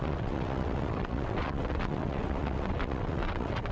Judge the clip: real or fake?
fake